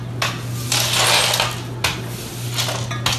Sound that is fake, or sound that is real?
real